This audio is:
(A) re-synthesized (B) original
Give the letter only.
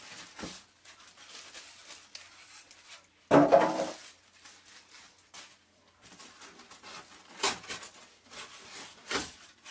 B